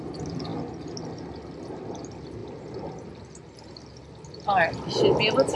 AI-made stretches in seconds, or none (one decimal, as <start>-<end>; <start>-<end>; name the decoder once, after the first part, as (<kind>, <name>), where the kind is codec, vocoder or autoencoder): none